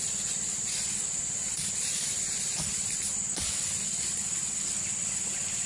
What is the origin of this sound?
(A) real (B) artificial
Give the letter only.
A